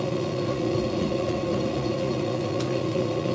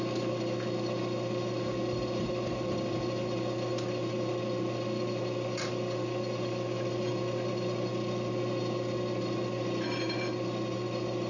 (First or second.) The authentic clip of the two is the second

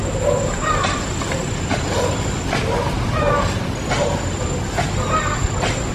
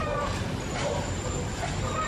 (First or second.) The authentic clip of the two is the first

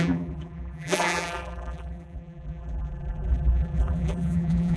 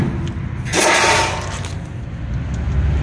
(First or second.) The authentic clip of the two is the second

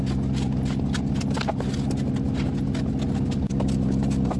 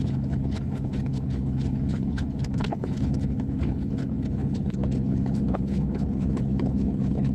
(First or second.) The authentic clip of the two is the first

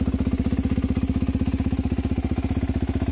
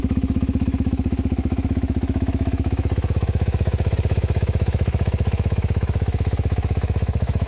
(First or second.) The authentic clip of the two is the first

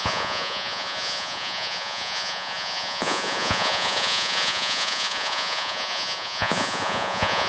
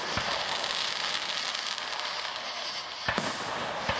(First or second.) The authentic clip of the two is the second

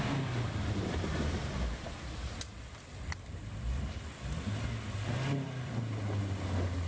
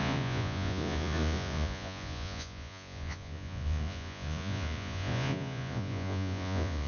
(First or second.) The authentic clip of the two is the first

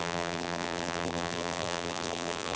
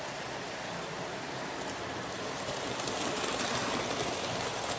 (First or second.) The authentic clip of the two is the second